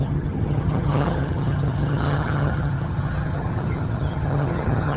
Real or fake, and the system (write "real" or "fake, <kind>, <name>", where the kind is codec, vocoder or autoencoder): fake, vocoder, HiFi-GAN